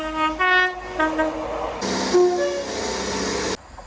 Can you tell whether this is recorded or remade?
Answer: recorded